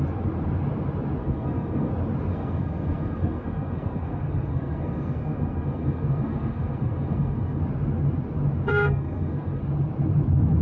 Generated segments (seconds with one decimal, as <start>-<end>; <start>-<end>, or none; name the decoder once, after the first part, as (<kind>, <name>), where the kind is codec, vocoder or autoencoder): 1.2-1.9 (codec, SNAC); 2.3-7.6; 8.7-9.6